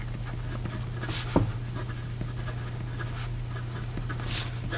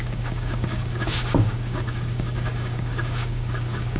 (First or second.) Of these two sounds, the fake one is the second